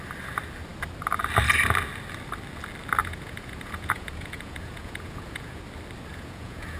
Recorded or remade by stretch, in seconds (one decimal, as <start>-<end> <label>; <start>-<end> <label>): 0.0-3.0 recorded; 3.0-5.6 remade; 5.6-6.1 recorded; 6.1-6.8 remade